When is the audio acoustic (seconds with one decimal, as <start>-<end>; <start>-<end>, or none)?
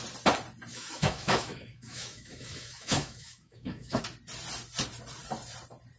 0.0-0.7; 4.0-6.0